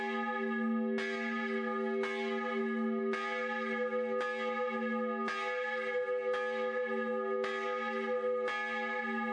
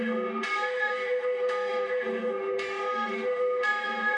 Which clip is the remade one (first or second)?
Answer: second